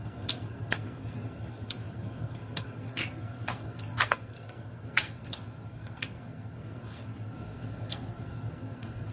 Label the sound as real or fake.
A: fake